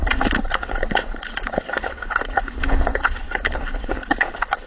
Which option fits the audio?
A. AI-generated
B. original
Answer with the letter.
A